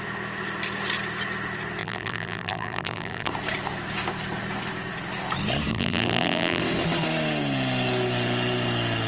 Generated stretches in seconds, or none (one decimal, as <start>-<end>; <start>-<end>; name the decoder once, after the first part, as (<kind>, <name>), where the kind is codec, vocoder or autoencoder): 1.8-3.3 (vocoder, BigVGAN v2); 5.7-6.6